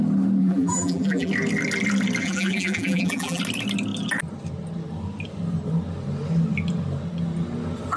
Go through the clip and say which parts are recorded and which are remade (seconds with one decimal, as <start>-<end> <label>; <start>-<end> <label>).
0.0-0.4 recorded; 0.4-1.3 remade; 1.3-2.2 recorded; 2.2-3.4 remade; 3.4-8.0 recorded